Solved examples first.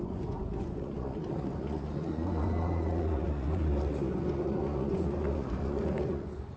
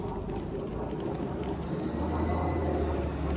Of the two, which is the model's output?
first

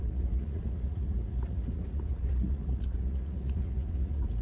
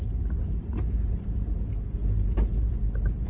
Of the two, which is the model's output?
first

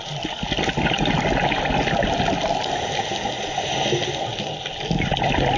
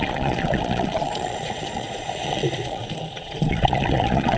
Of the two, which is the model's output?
second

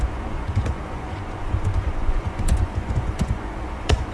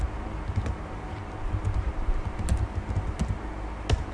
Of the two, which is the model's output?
first